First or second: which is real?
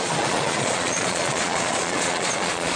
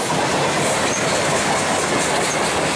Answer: second